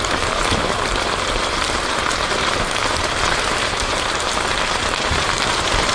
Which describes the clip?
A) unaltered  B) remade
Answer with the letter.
B